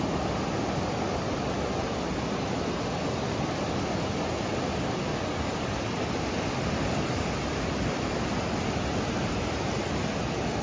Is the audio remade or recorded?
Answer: recorded